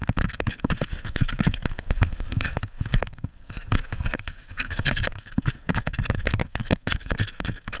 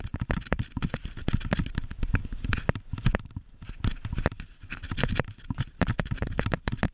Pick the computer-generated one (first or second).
first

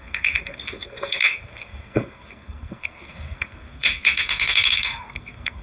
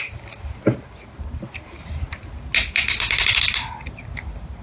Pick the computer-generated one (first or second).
first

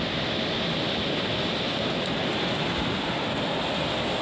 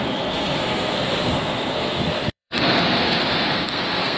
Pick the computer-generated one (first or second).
second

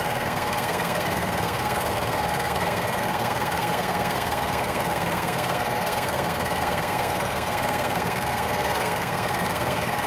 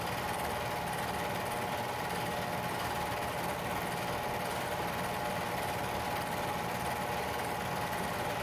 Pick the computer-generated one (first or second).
first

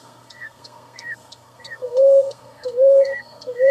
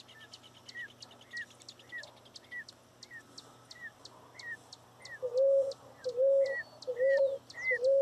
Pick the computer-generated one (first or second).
first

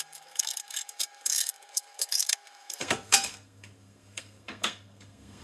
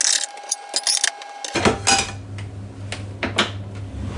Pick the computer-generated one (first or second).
first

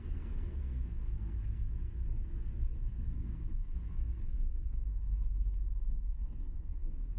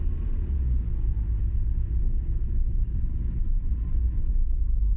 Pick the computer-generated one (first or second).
first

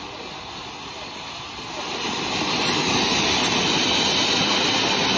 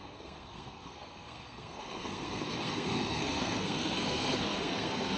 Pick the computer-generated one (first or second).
second